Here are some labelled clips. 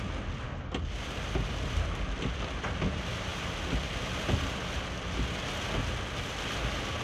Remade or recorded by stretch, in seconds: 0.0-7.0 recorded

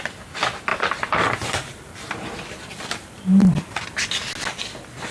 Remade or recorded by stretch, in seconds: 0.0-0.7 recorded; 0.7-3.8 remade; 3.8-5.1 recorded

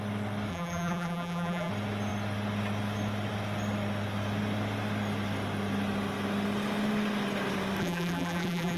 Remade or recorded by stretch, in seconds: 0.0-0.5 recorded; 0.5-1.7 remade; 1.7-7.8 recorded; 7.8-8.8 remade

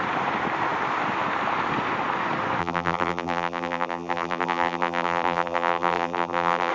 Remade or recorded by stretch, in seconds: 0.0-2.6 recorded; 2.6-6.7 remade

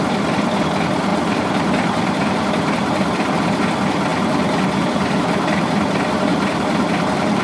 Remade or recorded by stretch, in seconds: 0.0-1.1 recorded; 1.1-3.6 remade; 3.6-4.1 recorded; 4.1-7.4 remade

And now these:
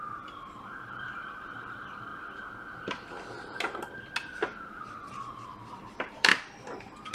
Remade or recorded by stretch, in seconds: 0.0-2.1 remade; 2.1-4.7 recorded; 4.7-6.3 remade; 6.3-7.1 recorded